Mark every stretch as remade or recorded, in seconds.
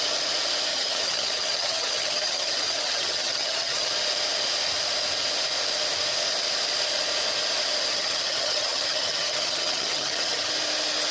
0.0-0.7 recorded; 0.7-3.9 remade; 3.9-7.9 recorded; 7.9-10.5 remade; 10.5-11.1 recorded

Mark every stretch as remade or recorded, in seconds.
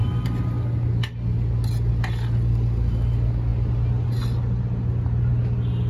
0.0-5.9 recorded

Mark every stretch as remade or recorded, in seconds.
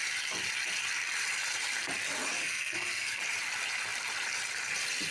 0.0-2.4 recorded; 2.4-3.2 remade; 3.2-5.1 recorded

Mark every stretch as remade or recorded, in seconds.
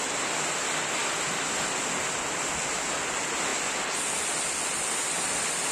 0.0-1.0 recorded; 1.0-1.7 remade; 1.7-5.7 recorded